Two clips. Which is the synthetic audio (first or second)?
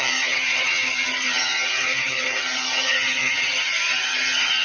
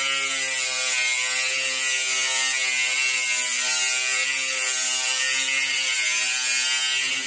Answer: first